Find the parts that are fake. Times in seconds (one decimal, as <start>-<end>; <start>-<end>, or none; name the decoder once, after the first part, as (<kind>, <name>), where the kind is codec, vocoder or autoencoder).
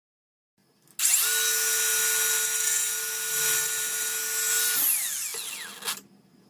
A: none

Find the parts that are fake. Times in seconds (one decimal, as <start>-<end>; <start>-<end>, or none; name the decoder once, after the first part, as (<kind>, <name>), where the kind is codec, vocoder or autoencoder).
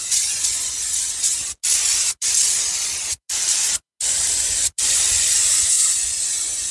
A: 0.0-1.4 (vocoder, Vocos); 5.4-6.7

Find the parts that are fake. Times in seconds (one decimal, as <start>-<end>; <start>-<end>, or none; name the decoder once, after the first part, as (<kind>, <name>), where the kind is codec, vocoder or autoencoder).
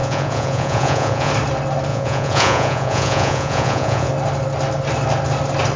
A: 0.0-1.3 (vocoder, Vocos); 1.9-4.1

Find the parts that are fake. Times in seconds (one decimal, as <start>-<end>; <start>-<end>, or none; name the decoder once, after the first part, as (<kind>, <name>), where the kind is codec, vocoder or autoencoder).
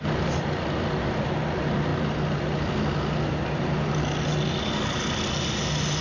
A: none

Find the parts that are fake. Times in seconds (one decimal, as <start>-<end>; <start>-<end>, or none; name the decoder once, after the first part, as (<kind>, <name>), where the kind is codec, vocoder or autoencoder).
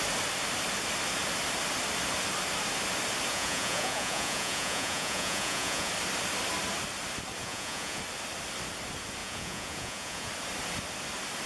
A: 3.3-5.9 (vocoder, Vocos); 7.4-8.0; 9.2-10.3